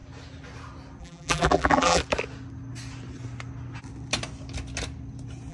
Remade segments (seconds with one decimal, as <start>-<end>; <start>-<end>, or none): 1.0-2.0